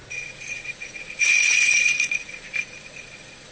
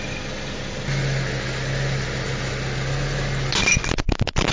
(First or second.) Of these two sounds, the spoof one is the first